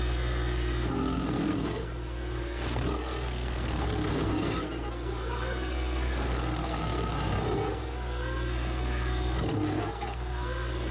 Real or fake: fake